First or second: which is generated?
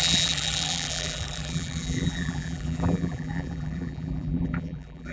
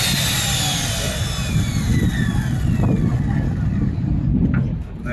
first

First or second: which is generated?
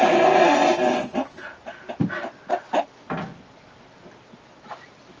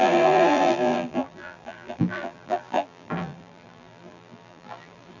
second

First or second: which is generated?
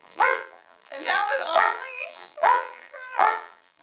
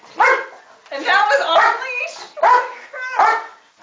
first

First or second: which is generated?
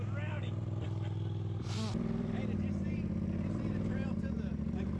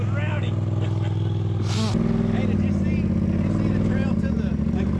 first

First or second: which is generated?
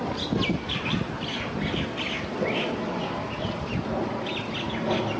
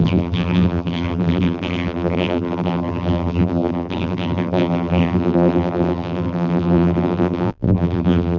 second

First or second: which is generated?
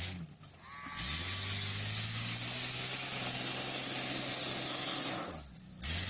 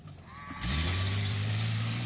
second